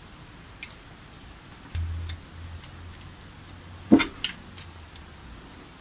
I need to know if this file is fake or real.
real